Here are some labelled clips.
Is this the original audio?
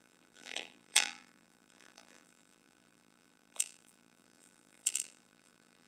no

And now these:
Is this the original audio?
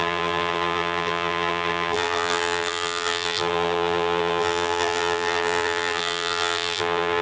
no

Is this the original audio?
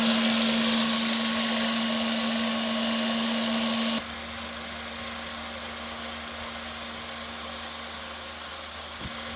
yes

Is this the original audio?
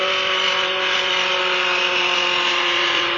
no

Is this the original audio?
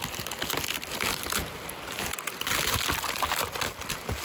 yes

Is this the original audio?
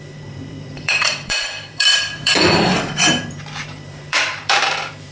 no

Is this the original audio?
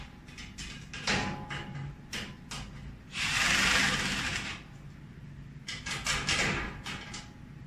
yes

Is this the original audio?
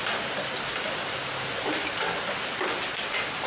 no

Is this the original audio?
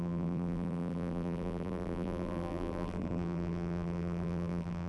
no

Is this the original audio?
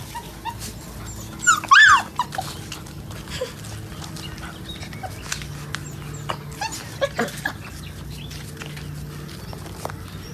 yes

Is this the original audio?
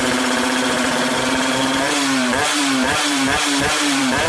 no